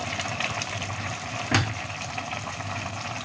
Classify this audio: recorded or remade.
remade